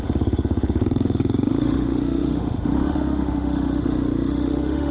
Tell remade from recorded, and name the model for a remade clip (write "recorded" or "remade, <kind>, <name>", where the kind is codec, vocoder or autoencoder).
remade, autoencoder, DAC-VAE